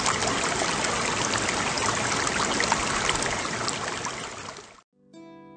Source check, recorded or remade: recorded